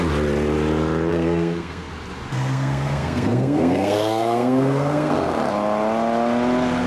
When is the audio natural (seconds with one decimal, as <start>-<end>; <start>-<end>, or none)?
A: 0.0-1.1; 1.9-2.3; 5.4-6.9